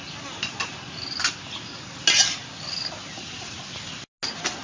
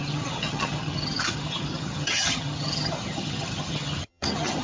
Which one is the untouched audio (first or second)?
first